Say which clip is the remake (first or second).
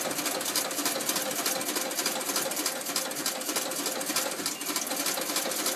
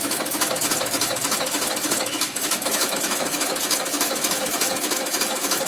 second